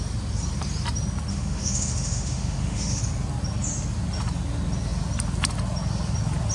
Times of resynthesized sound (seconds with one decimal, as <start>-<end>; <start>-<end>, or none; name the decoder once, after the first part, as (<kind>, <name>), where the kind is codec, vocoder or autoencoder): 1.3-3.0 (autoencoder, DAC-VAE)